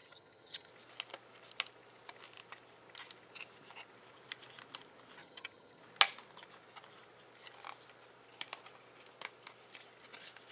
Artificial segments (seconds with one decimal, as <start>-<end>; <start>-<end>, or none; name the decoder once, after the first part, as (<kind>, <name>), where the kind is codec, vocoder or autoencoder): 0.0-0.7 (vocoder, HiFi-GAN); 5.2-5.8